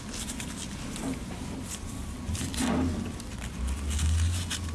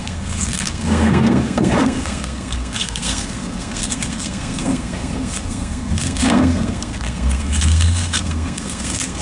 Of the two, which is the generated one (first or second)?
second